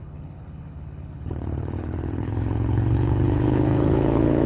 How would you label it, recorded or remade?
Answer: remade